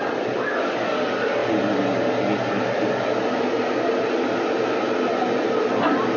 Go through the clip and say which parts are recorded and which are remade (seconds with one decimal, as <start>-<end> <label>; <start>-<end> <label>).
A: 0.0-6.2 recorded